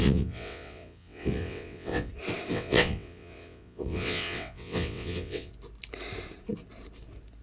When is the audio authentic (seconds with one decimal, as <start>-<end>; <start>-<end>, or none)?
2.1-2.5; 5.5-7.4